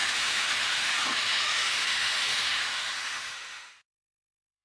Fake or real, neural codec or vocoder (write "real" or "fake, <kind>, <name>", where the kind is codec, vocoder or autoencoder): fake, autoencoder, DAC-VAE